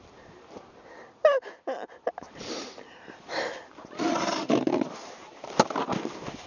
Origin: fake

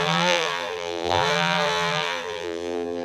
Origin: fake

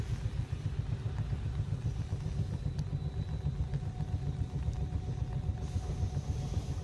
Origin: real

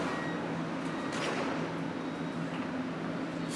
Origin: real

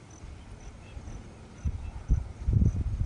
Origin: real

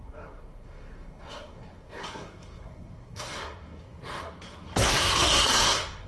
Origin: fake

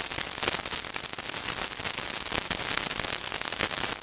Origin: real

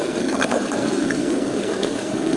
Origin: fake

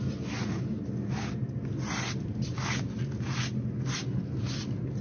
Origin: real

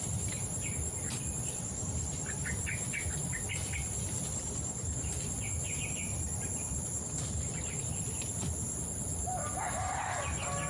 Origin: real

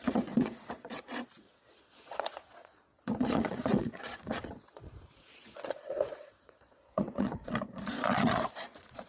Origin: fake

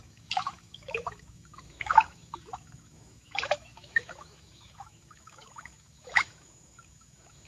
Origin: fake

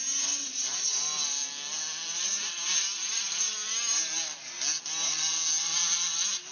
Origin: real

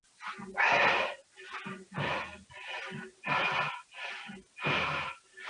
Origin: real